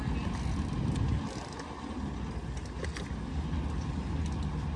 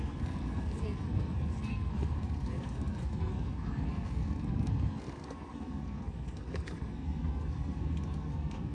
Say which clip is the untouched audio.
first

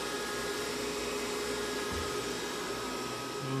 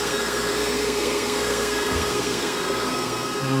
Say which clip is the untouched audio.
first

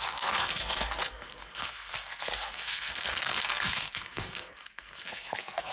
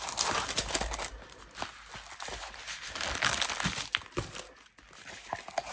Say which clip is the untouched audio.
second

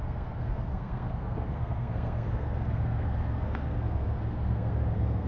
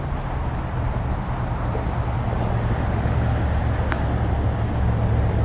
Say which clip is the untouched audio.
second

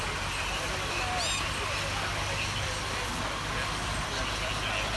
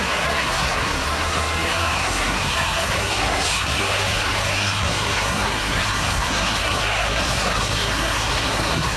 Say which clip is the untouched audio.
first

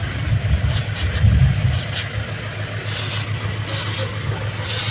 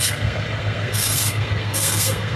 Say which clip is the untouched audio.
first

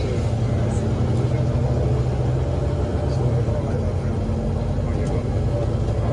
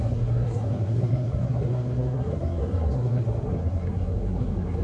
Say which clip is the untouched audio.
first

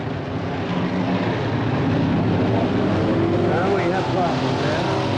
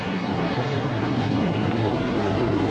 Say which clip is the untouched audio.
first